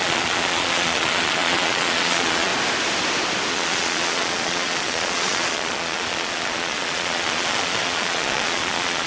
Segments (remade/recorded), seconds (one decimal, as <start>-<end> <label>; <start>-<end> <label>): 0.0-2.5 remade; 2.5-3.5 recorded; 3.5-9.1 remade

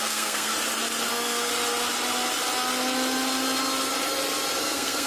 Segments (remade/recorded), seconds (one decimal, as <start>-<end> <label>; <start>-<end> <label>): 0.0-0.5 remade; 0.5-1.1 recorded; 1.1-1.5 remade; 1.5-4.6 recorded; 4.6-5.1 remade

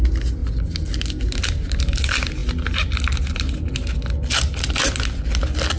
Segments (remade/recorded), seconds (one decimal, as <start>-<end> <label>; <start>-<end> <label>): 0.0-5.8 recorded